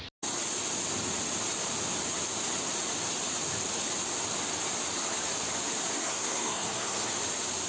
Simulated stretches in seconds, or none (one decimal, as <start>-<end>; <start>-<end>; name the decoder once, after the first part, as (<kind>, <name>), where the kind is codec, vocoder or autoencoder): 6.0-7.1 (codec, SNAC)